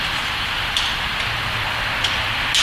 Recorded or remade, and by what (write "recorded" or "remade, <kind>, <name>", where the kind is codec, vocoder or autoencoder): recorded